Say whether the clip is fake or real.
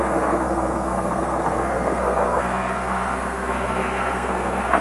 fake